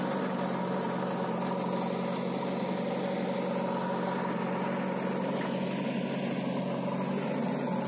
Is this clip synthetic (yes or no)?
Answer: no